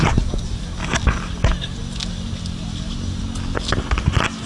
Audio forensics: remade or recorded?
recorded